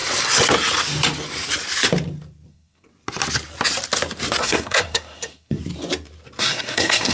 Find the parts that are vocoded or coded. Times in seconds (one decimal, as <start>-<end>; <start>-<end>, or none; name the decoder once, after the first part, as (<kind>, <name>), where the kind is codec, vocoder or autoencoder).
2.5-2.9 (codec, SNAC); 4.4-5.6; 6.4-7.1